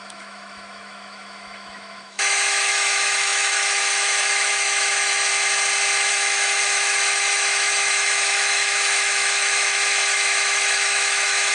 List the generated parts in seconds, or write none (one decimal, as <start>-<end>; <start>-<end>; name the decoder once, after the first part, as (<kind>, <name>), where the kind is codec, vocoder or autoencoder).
0.0-5.3 (autoencoder, DAC-VAE); 6.1-11.5